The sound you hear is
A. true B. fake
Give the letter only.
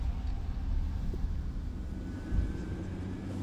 B